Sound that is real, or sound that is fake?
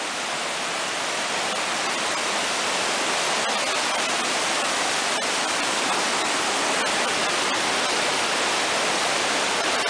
real